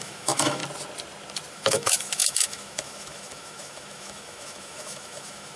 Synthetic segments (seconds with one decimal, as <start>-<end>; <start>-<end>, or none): 0.0-0.6; 1.5-5.6